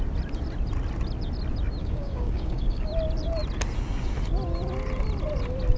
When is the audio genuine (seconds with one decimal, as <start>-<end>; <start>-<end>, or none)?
0.0-1.8; 2.9-5.8